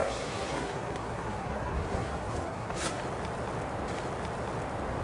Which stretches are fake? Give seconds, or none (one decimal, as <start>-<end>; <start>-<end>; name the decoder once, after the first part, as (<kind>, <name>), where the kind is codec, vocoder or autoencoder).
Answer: 0.0-3.0 (codec, SNAC)